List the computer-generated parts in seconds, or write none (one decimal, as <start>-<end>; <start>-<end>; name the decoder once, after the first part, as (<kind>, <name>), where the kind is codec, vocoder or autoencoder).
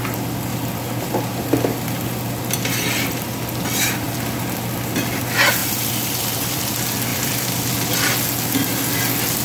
0.5-1.1 (vocoder, BigVGAN v2); 5.6-6.6; 7.1-7.7